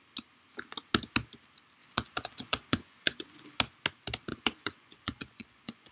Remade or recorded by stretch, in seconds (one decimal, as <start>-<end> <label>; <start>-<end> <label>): 0.0-1.8 recorded; 1.8-3.6 remade; 3.6-4.3 recorded; 4.3-5.9 remade